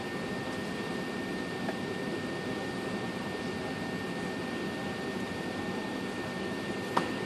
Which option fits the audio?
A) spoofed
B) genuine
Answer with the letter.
B